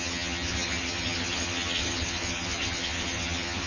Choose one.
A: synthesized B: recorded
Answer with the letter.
A